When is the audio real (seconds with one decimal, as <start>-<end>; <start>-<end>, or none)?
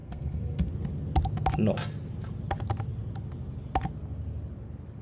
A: 0.7-5.0